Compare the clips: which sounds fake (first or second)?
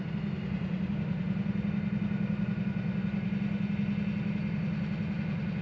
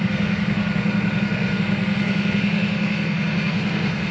second